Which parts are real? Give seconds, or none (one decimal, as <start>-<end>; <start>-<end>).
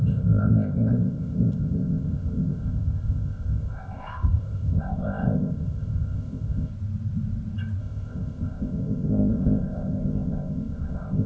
6.7-7.8